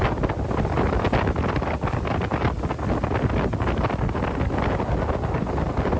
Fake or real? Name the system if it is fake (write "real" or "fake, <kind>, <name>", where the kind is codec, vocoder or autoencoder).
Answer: real